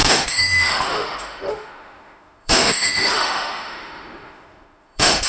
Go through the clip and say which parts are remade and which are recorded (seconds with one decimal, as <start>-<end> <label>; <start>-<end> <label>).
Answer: 0.0-5.3 remade